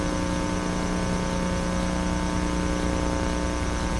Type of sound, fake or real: real